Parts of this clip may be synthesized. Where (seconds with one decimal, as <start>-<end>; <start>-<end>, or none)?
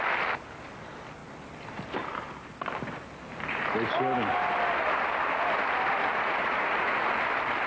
6.0-7.1